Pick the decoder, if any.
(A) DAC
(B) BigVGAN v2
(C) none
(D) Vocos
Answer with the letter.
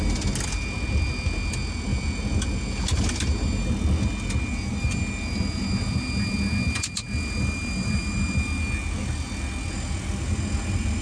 C